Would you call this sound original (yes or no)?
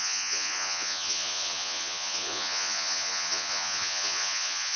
no